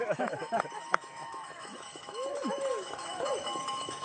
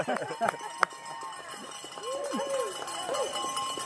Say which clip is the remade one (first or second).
first